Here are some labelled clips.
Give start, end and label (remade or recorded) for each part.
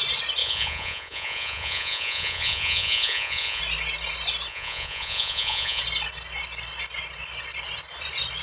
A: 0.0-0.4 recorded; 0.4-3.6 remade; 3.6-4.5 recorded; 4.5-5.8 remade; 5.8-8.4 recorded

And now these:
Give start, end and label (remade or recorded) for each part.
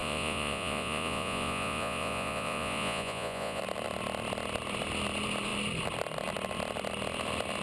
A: 0.0-3.6 remade; 3.6-7.6 recorded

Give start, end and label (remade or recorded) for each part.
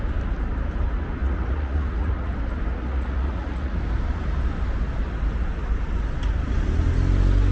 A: 0.0-1.2 recorded; 1.2-2.3 remade; 2.3-2.7 recorded; 2.7-3.8 remade; 3.8-7.5 recorded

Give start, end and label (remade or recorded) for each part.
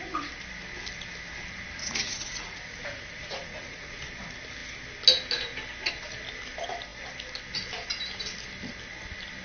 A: 0.0-1.8 recorded; 1.8-4.0 remade; 4.0-9.4 recorded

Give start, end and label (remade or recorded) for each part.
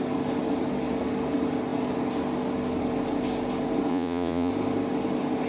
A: 0.0-3.9 recorded; 3.9-4.5 remade; 4.5-5.5 recorded